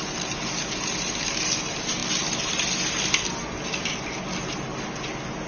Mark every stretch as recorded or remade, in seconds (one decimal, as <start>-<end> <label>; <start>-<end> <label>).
0.0-5.5 recorded